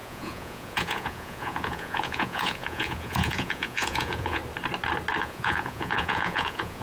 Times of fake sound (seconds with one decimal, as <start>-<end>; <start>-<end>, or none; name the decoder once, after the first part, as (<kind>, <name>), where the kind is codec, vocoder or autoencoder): 0.0-4.4 (vocoder, Vocos); 5.2-6.8